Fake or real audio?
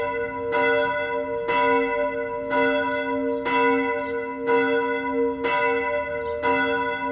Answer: real